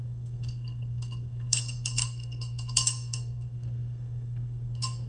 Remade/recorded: remade